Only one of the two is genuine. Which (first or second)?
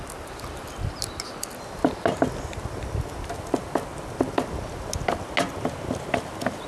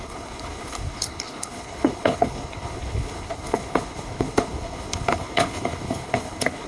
first